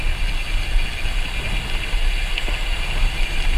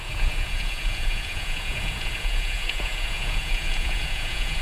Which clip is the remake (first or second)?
second